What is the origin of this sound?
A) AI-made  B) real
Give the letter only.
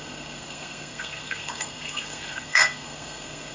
A